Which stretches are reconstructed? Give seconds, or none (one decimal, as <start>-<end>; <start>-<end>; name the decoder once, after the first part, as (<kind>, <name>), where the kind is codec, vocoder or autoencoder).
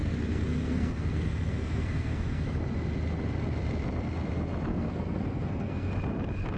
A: 0.0-2.6 (codec, SNAC); 4.7-5.9